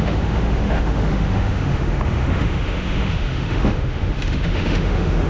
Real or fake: fake